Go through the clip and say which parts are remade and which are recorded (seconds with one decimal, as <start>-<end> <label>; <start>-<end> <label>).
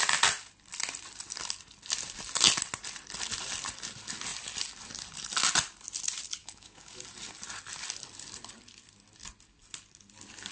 0.0-6.4 recorded; 6.4-7.0 remade; 7.0-10.5 recorded